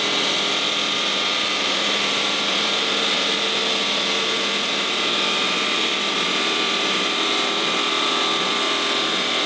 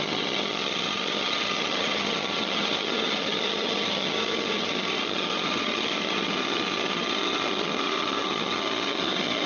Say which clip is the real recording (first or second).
first